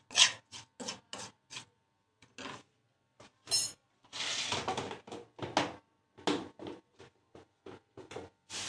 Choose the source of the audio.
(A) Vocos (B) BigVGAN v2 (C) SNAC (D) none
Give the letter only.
D